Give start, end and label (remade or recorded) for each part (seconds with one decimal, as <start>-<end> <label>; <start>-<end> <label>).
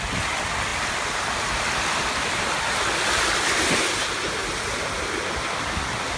0.0-6.2 recorded